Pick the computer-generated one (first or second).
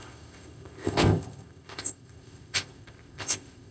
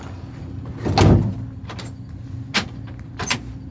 first